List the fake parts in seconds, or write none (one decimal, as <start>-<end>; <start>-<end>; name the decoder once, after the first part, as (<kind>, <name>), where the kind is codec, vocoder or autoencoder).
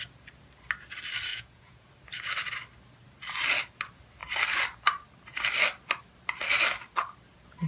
1.3-1.9 (vocoder, Vocos)